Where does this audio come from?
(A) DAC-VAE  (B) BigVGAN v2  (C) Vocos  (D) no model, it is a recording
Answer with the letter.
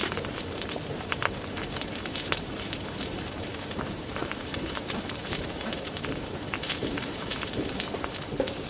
B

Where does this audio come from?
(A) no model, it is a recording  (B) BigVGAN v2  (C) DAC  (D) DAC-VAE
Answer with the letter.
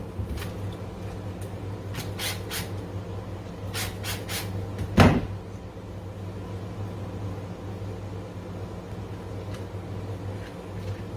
A